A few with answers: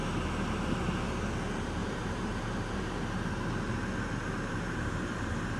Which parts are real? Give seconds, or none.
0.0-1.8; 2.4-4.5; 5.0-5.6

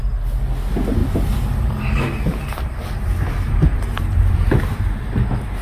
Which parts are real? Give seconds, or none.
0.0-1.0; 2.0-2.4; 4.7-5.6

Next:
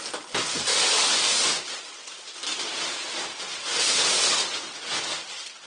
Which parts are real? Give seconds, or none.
0.0-5.7

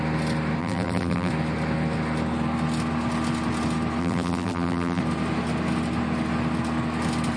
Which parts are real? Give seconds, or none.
0.0-0.6; 1.3-4.0; 5.0-7.4